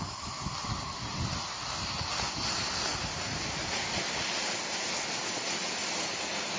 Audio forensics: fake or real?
real